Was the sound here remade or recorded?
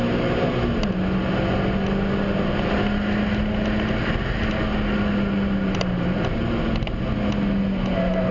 recorded